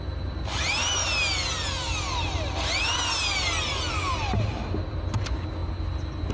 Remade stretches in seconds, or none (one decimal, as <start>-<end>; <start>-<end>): none